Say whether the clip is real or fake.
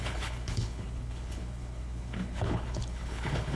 fake